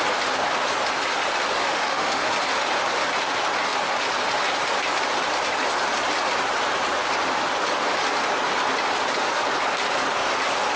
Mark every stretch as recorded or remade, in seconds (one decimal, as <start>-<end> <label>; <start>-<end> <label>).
0.0-1.6 recorded; 1.6-2.3 remade; 2.3-10.8 recorded